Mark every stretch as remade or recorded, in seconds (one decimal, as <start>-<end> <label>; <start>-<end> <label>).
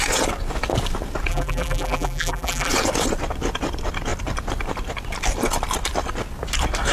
0.0-1.3 recorded; 1.3-2.7 remade; 2.7-6.9 recorded